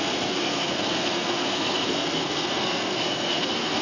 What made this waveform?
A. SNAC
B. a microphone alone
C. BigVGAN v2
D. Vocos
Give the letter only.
A